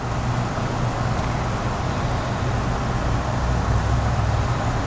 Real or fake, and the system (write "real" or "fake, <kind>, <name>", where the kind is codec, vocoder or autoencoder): real